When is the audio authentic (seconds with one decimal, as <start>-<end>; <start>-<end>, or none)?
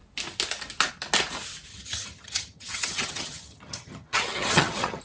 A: 0.0-1.7